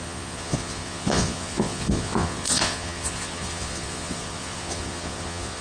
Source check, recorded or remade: remade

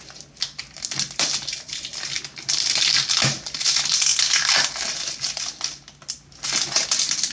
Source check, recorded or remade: recorded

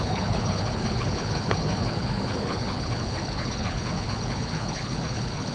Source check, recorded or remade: remade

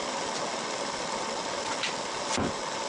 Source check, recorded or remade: recorded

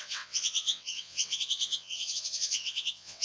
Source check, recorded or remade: remade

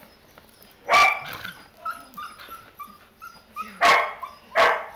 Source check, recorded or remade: recorded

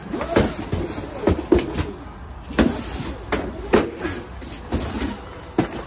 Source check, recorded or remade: recorded